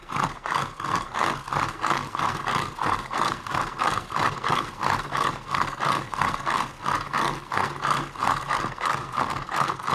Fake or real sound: fake